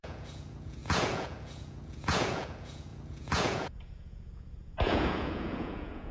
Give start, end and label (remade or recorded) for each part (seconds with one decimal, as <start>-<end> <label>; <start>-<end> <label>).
0.0-6.1 remade